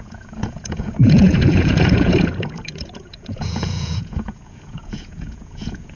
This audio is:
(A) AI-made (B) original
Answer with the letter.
A